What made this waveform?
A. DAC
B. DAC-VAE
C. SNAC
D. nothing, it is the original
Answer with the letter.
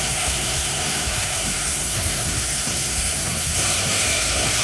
C